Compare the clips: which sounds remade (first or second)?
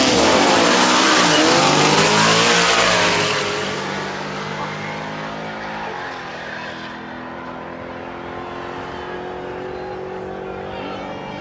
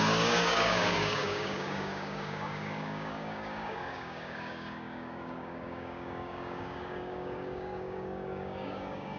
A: second